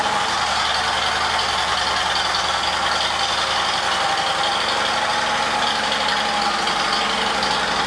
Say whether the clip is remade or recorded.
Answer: recorded